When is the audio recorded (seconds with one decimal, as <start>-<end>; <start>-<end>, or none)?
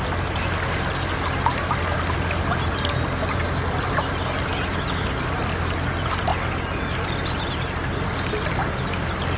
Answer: 0.0-9.4